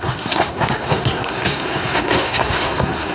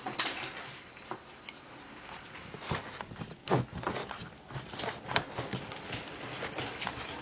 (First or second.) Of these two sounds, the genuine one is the second